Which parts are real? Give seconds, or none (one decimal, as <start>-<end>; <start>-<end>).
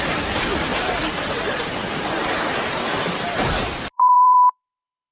none